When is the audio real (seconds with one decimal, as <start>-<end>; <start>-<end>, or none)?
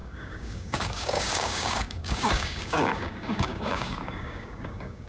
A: none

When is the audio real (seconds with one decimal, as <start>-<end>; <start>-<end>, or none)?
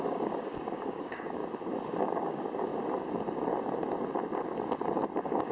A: 1.4-2.0; 2.7-5.5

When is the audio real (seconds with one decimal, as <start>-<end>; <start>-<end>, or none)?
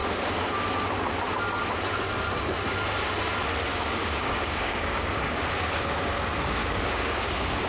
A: 0.0-3.7; 5.4-6.6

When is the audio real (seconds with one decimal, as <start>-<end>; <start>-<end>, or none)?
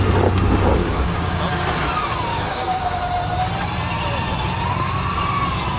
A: 0.0-0.8; 1.4-2.3; 3.0-5.8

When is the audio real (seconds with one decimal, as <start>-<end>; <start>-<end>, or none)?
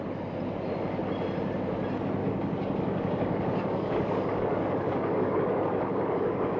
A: 0.0-2.2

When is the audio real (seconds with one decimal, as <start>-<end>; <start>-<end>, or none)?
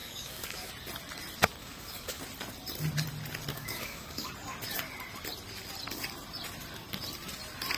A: 0.7-1.6; 2.2-3.5; 4.3-7.8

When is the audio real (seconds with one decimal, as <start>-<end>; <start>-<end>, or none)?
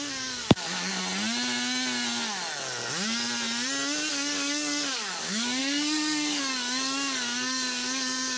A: 1.0-4.1